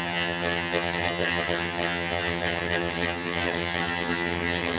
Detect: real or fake fake